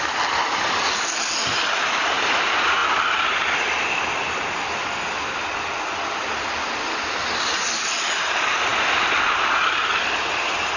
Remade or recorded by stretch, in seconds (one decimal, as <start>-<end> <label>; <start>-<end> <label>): 0.0-10.8 recorded